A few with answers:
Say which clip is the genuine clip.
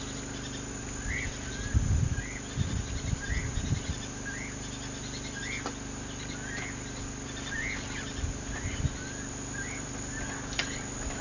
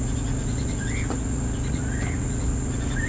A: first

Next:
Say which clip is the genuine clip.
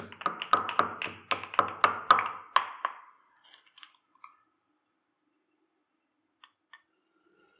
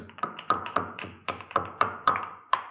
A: first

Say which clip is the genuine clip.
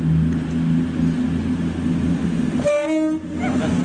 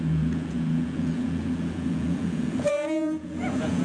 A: first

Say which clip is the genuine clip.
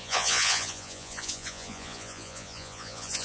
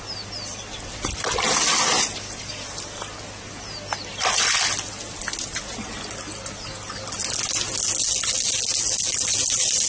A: second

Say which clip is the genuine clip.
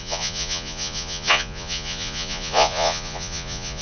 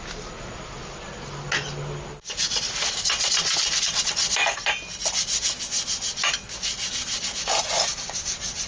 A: second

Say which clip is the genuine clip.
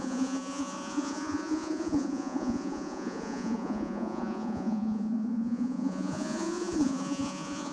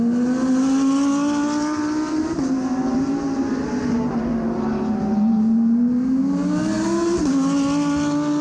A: second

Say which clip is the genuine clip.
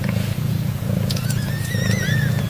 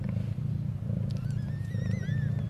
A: second